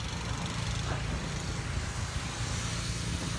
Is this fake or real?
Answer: real